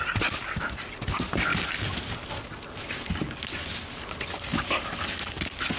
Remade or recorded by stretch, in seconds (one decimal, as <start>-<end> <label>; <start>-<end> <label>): 0.0-5.8 recorded